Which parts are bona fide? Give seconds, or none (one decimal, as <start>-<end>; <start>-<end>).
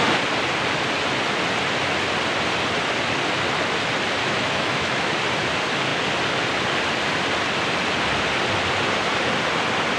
0.0-4.2; 5.1-10.0